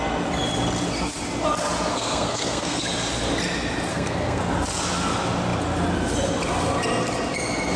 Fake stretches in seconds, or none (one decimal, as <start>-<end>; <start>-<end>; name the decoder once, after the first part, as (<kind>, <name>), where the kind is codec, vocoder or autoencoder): 1.9-2.8 (codec, SNAC); 3.9-4.4